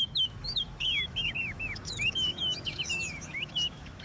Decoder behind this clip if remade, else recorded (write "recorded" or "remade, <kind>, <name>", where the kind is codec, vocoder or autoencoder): remade, autoencoder, DAC-VAE